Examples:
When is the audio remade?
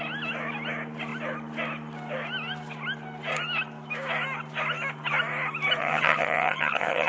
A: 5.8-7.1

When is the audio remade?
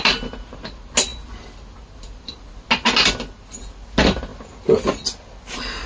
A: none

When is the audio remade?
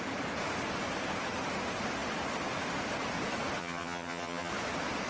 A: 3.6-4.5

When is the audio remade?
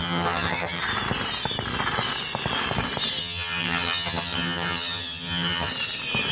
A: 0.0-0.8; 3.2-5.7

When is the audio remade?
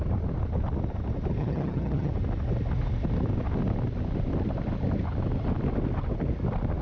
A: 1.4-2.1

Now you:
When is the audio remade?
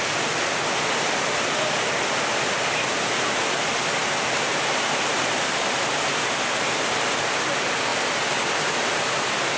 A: none